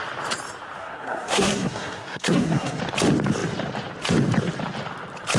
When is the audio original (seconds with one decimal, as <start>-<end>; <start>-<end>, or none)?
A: 0.0-0.8; 2.8-5.4